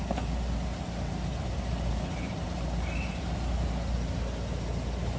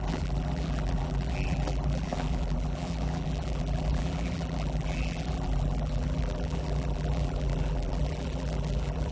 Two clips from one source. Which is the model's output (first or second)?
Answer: second